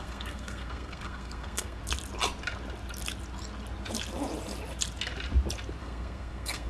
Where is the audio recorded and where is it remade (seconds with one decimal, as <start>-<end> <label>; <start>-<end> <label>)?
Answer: 0.0-1.8 remade; 1.8-5.8 recorded; 5.8-6.7 remade